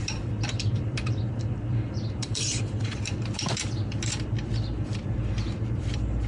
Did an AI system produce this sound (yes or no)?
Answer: yes